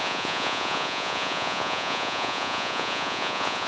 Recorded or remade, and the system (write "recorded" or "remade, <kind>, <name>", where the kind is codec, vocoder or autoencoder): remade, vocoder, Vocos